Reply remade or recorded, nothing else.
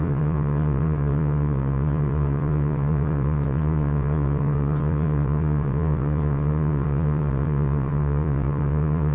remade